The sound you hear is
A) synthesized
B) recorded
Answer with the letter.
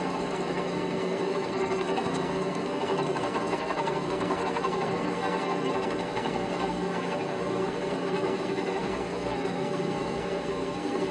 A